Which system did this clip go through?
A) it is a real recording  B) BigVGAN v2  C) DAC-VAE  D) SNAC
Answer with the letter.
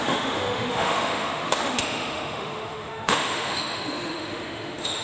C